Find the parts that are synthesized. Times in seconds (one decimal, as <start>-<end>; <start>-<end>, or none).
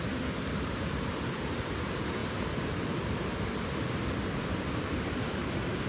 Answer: 2.2-5.9